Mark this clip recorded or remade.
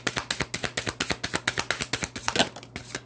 recorded